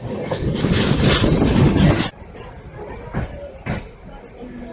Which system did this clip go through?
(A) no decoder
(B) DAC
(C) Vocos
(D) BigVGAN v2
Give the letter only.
A